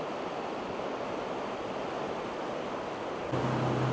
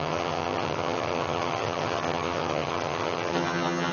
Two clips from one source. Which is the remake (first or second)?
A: second